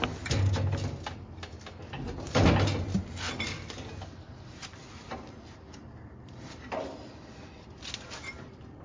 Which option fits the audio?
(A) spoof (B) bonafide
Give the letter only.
B